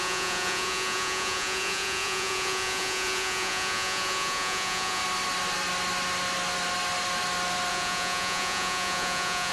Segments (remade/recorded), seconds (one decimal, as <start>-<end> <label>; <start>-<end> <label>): 0.0-5.0 remade; 5.0-7.7 recorded; 7.7-9.5 remade